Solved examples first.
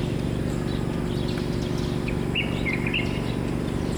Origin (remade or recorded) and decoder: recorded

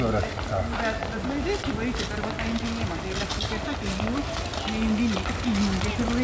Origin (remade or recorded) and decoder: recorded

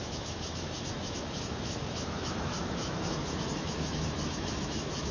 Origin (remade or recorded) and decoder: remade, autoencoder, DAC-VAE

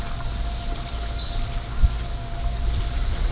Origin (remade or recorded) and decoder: recorded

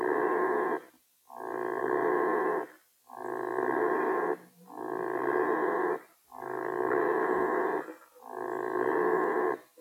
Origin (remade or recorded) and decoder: recorded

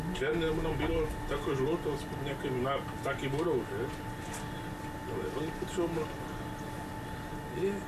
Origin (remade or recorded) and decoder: recorded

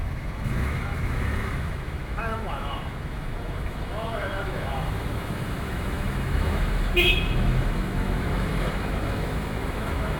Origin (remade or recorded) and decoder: remade, autoencoder, DAC-VAE